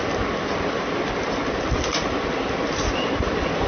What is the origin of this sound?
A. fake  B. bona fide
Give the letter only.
B